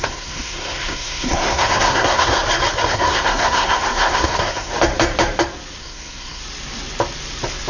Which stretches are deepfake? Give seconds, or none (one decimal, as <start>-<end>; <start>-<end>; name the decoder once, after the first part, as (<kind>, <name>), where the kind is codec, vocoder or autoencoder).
0.0-2.4 (codec, SNAC); 2.9-4.7; 5.8-6.4